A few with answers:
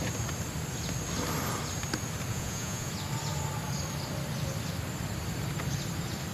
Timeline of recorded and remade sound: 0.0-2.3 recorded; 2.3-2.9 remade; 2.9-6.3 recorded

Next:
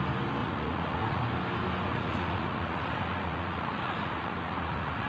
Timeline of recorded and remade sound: 0.0-0.4 recorded; 0.4-1.2 remade; 1.2-1.9 recorded; 1.9-5.1 remade

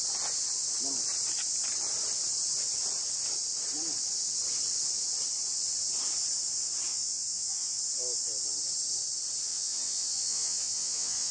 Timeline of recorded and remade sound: 0.0-6.9 recorded; 6.9-7.8 remade; 7.8-9.5 recorded; 9.5-11.3 remade

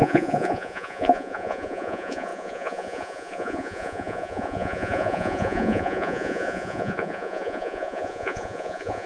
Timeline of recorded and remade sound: 0.0-9.1 remade